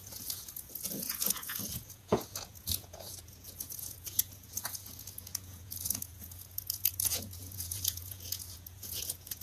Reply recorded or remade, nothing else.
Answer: remade